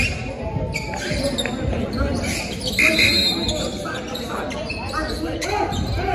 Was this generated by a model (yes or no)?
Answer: no